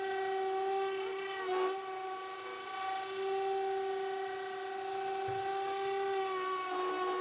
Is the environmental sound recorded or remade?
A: recorded